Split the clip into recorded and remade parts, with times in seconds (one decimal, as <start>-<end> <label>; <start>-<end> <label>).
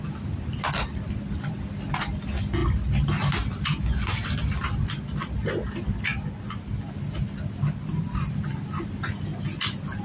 0.0-10.0 recorded